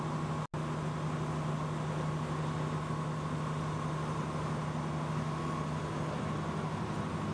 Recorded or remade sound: recorded